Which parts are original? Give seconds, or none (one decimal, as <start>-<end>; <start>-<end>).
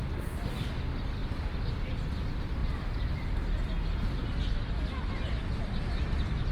0.0-1.2; 1.9-6.5